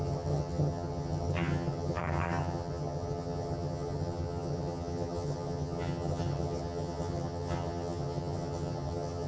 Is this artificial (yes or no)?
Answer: yes